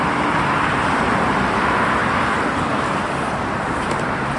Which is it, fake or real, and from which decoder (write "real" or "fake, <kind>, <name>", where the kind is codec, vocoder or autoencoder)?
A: fake, vocoder, BigVGAN v2